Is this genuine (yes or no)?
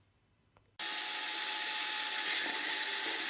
yes